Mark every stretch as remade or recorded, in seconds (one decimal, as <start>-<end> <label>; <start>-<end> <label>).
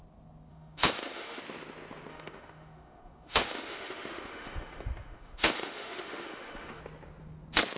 0.0-0.5 recorded; 0.5-1.4 remade; 1.4-2.1 recorded; 2.1-6.8 remade; 6.8-7.8 recorded